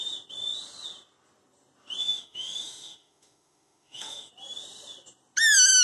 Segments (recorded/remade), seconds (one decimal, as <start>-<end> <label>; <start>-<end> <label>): 0.0-2.0 recorded; 2.0-4.3 remade; 4.3-5.8 recorded